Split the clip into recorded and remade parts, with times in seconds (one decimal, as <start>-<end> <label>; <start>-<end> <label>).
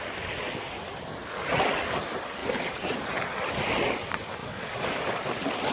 0.0-2.4 recorded; 2.4-2.9 remade; 2.9-4.4 recorded; 4.4-5.3 remade; 5.3-5.7 recorded